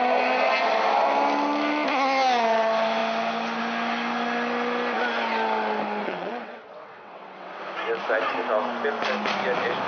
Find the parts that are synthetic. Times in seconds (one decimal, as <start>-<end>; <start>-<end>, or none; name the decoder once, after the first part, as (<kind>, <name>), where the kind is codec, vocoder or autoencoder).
6.0-7.6 (vocoder, WaveNeXt)

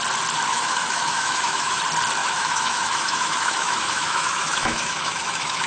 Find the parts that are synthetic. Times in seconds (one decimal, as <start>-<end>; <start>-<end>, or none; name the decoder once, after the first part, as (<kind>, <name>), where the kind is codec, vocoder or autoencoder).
0.5-1.8 (autoencoder, DAC-VAE); 2.2-5.7

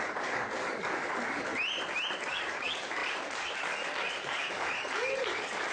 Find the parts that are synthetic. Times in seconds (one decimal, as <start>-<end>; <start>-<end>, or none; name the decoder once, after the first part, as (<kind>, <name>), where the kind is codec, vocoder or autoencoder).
0.0-1.5 (codec, DAC); 2.2-5.7

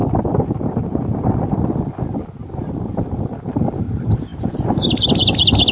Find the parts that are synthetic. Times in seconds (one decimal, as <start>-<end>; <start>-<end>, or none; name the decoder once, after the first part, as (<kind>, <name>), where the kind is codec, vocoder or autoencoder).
none

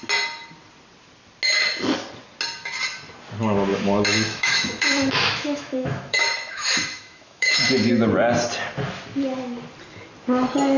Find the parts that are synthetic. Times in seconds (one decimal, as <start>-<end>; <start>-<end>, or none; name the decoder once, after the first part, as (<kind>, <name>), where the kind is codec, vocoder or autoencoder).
3.7-7.9 (autoencoder, DAC-VAE)

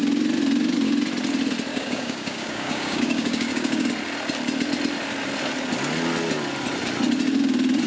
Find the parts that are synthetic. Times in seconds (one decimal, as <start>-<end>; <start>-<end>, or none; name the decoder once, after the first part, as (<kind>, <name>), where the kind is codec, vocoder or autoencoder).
1.7-3.9 (codec, DAC)